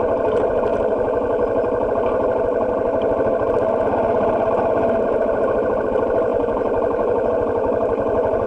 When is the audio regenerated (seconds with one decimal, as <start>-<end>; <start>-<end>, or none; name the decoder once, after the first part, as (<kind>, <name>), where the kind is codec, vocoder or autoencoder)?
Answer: 0.0-0.7 (vocoder, BigVGAN v2); 1.9-8.5